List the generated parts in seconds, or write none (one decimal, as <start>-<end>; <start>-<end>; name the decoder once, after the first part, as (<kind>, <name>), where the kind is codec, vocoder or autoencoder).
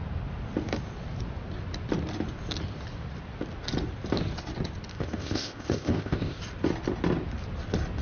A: 4.9-6.4 (codec, ZipCodec)